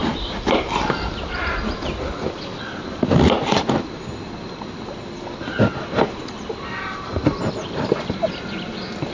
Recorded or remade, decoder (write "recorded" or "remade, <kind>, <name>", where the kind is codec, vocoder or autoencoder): recorded